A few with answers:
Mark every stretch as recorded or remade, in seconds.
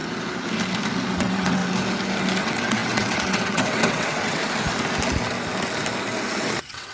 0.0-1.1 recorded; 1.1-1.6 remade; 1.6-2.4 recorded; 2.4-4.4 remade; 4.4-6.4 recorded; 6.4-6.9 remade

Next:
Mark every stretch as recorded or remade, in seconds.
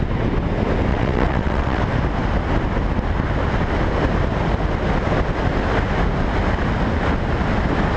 0.0-0.9 recorded; 0.9-1.8 remade; 1.8-8.0 recorded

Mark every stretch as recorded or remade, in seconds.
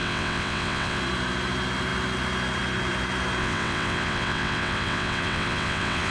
0.0-1.0 remade; 1.0-3.4 recorded; 3.4-6.1 remade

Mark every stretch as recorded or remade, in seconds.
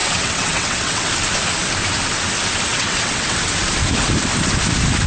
0.0-1.1 remade; 1.1-2.7 recorded; 2.7-3.4 remade; 3.4-5.1 recorded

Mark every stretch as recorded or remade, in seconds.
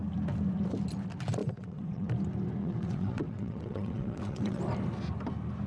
0.0-1.4 recorded; 1.4-2.1 remade; 2.1-2.6 recorded; 2.6-4.6 remade; 4.6-5.7 recorded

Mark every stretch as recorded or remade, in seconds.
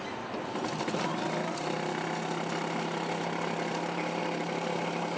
0.0-5.2 recorded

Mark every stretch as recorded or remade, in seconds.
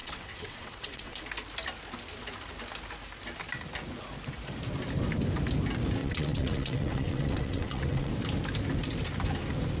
0.0-1.2 remade; 1.2-6.0 recorded; 6.0-8.1 remade; 8.1-9.8 recorded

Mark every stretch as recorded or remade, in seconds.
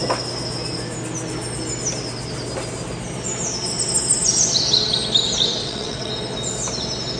0.0-5.6 recorded; 5.6-6.1 remade; 6.1-7.2 recorded